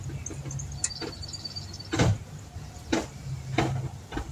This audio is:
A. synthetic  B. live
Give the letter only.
B